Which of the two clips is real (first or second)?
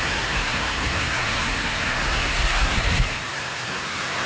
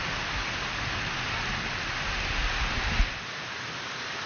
second